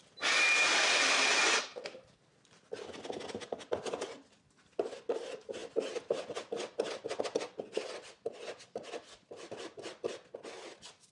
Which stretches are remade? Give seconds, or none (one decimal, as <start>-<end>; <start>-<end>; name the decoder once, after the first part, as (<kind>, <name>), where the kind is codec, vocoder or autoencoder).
none